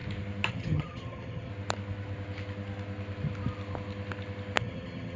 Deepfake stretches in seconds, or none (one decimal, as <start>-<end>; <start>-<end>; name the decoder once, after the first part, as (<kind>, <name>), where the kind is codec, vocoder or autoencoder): 0.5-1.5 (vocoder, HiFi-GAN); 4.6-5.2